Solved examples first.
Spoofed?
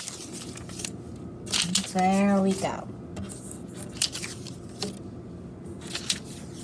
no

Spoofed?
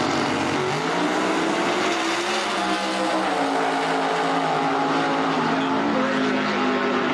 no